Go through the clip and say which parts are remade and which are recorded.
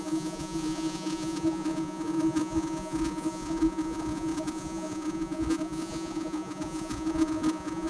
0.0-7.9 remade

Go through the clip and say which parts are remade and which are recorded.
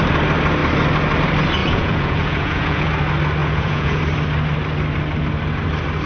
0.0-1.6 recorded; 1.6-2.9 remade; 2.9-3.4 recorded; 3.4-4.0 remade; 4.0-6.1 recorded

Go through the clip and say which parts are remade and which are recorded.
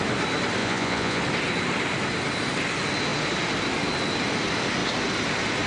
0.0-0.6 recorded; 0.6-1.2 remade; 1.2-5.7 recorded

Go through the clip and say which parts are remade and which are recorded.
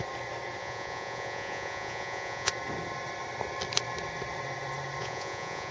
0.0-0.6 recorded; 0.6-2.5 remade; 2.5-5.0 recorded; 5.0-5.7 remade